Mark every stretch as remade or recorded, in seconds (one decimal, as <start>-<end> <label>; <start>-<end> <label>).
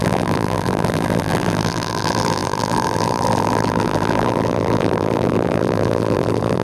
0.0-6.6 remade